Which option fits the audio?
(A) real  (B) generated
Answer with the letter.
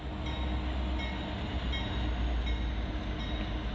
A